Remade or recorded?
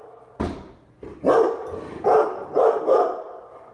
remade